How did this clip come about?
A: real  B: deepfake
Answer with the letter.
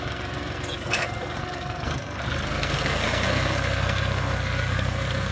B